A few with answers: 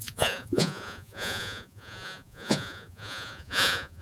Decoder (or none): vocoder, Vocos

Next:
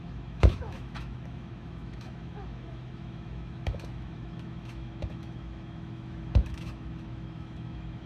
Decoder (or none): autoencoder, DAC-VAE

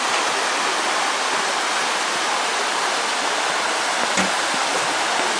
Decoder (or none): none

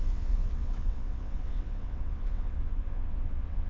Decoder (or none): vocoder, WaveNeXt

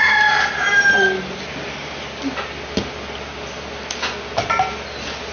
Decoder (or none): none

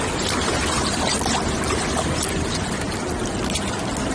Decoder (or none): none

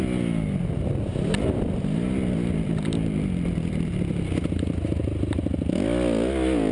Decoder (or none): none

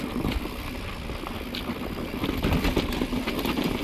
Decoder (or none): none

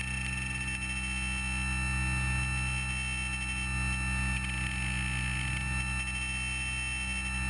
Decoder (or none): none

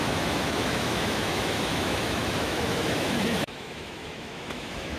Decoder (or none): autoencoder, DAC-VAE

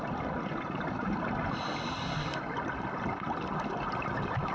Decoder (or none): none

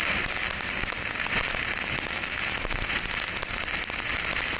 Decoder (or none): none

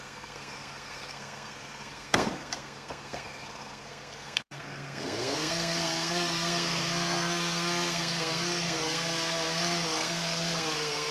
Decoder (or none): codec, SNAC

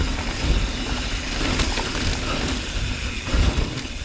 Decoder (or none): none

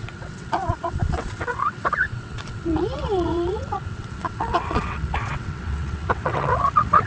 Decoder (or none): vocoder, WaveNeXt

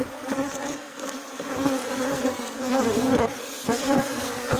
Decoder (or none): codec, SNAC